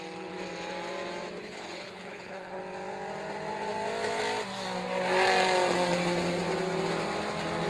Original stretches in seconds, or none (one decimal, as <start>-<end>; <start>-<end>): 0.0-1.4; 2.6-7.7